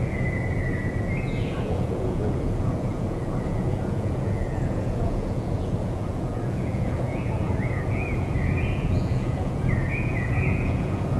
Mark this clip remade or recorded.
remade